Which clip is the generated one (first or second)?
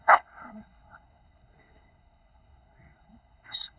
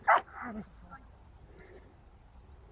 first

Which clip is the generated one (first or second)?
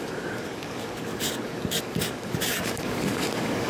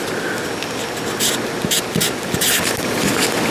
first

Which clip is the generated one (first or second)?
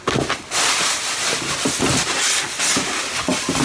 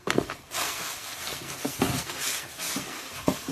second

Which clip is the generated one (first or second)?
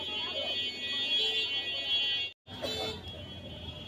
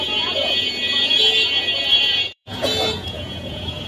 second